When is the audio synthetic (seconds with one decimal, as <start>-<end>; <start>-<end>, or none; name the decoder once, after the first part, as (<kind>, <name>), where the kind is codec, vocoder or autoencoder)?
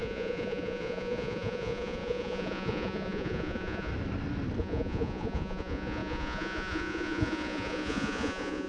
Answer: 0.0-3.9 (vocoder, Vocos); 4.6-8.7